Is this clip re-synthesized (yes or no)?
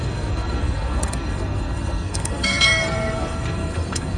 yes